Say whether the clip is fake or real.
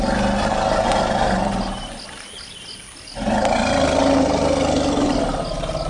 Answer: real